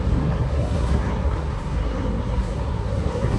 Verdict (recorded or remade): remade